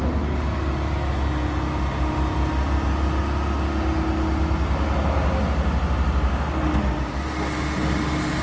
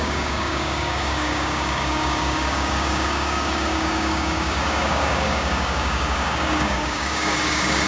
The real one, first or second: first